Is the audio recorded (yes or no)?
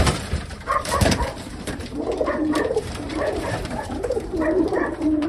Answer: no